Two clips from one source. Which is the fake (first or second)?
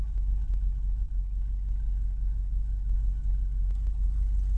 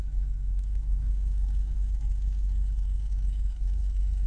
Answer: second